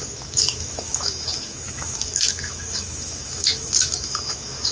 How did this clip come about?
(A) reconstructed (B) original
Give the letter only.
A